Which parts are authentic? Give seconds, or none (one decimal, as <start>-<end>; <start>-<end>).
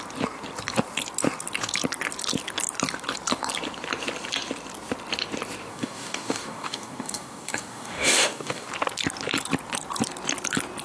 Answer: 0.0-5.7; 8.7-10.8